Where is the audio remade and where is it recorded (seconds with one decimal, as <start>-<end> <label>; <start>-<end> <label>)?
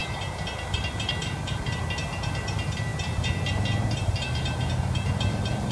0.0-5.7 recorded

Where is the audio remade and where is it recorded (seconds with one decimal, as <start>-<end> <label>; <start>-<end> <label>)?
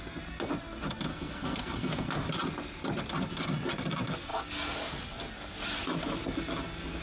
0.0-1.1 recorded; 1.1-2.1 remade; 2.1-7.0 recorded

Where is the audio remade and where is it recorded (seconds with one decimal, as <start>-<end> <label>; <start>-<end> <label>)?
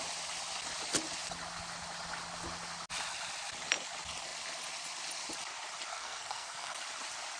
0.0-5.9 recorded; 5.9-6.8 remade; 6.8-7.4 recorded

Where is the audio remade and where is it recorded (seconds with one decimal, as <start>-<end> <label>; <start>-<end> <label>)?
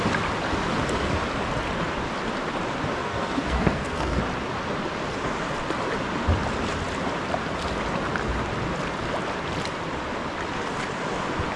0.0-3.0 recorded; 3.0-4.2 remade; 4.2-11.6 recorded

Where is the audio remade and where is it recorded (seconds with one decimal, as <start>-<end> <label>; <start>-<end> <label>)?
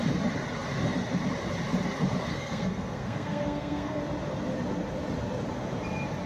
0.0-2.3 recorded; 2.3-4.0 remade; 4.0-6.3 recorded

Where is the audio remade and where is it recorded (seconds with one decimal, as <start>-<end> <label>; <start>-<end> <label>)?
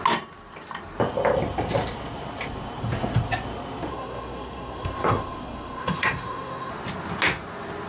0.0-3.9 recorded; 3.9-6.7 remade; 6.7-7.9 recorded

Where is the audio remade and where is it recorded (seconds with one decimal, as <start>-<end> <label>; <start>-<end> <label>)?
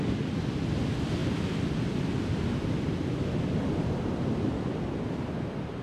0.0-5.8 recorded